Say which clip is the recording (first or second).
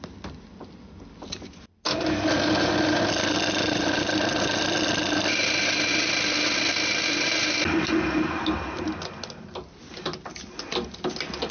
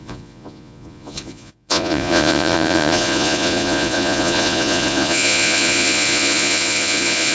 first